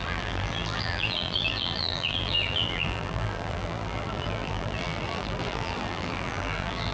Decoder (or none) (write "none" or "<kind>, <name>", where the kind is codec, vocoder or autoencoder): vocoder, BigVGAN v2